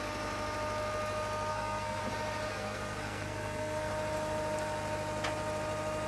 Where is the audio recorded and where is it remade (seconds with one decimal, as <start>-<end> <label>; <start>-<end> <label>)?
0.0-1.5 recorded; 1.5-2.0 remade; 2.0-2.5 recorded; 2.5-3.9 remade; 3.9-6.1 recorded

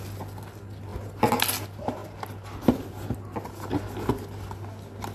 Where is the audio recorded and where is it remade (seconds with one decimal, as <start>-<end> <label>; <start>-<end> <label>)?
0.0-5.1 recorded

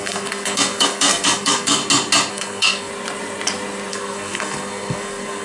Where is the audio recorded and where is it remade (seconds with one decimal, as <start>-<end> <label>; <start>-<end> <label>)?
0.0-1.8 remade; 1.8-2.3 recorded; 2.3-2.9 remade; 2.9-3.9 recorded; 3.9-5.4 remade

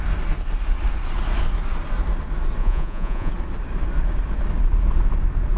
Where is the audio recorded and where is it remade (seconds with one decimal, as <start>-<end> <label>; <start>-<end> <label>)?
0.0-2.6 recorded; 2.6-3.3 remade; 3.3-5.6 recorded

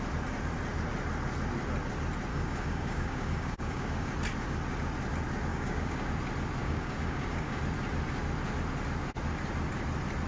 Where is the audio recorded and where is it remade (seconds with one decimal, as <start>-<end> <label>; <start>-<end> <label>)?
0.0-2.3 recorded; 2.3-4.1 remade; 4.1-5.5 recorded; 5.5-6.1 remade; 6.1-6.6 recorded; 6.6-7.6 remade; 7.6-10.3 recorded